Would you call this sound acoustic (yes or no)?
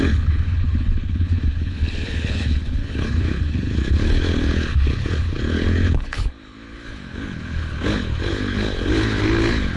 no